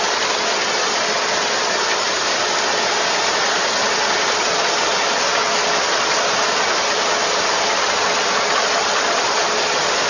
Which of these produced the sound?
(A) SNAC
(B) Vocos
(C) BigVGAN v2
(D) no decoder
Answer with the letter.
D